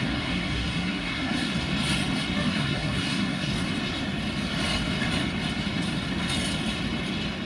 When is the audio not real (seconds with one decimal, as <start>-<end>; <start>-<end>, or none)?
0.0-1.5; 2.5-3.5